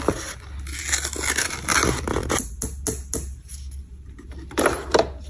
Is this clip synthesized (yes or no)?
no